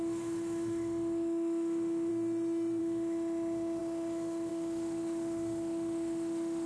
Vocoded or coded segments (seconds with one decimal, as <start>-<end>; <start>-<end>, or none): 0.0-2.1; 2.8-6.7